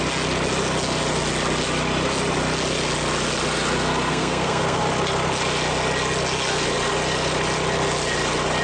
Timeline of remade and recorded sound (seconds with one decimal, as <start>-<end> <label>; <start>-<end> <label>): 0.0-4.1 recorded; 4.1-4.8 remade; 4.8-8.6 recorded